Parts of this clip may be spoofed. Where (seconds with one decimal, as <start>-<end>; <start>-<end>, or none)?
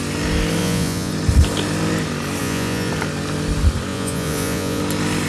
0.6-1.1; 2.4-2.9; 3.9-4.8